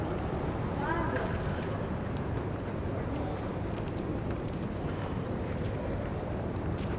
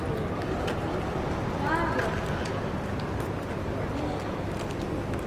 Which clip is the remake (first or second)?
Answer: first